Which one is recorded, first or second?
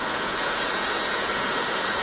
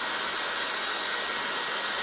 second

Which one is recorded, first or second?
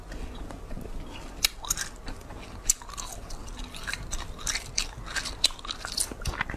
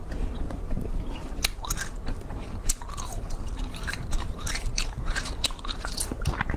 first